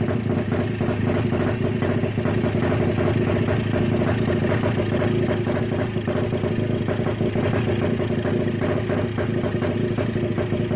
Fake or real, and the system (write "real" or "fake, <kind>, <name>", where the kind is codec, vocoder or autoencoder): real